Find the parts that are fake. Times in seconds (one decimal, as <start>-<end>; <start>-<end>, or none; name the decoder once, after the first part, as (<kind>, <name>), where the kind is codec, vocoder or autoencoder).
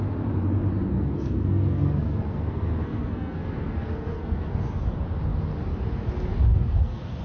0.9-4.8 (codec, SNAC); 6.5-7.2